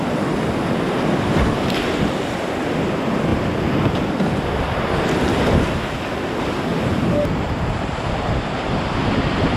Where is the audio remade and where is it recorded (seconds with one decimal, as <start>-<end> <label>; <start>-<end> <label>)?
0.0-6.7 recorded; 6.7-8.7 remade; 8.7-9.6 recorded